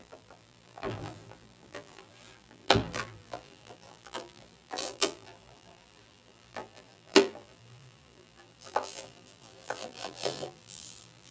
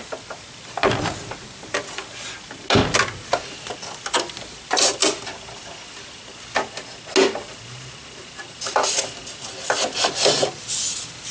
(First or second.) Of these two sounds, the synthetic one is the first